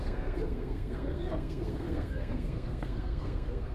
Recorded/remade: remade